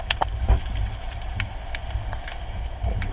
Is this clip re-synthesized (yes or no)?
no